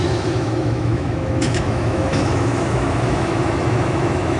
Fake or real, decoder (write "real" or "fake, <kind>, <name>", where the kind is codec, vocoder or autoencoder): fake, autoencoder, DAC-VAE